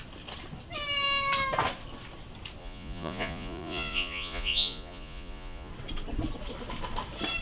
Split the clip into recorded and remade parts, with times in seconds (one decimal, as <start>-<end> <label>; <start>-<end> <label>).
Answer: 0.0-2.6 recorded; 2.6-5.7 remade; 5.7-7.4 recorded